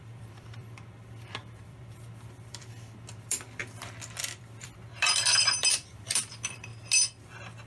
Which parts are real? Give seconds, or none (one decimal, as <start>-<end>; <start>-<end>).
3.6-4.2; 6.7-7.7